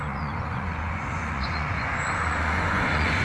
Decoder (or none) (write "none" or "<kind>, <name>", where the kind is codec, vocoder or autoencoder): vocoder, Vocos